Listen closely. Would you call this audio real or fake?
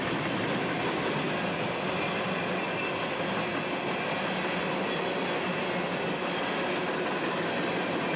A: real